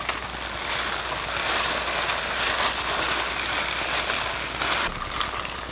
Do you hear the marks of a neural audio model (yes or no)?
no